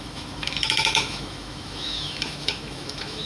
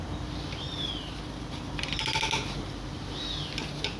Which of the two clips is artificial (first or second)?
first